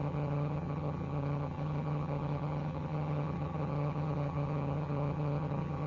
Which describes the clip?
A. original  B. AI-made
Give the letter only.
B